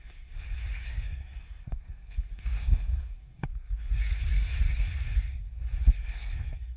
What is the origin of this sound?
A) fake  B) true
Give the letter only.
A